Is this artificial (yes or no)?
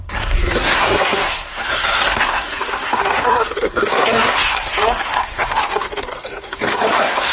yes